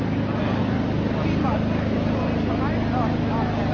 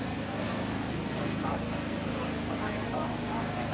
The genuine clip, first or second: first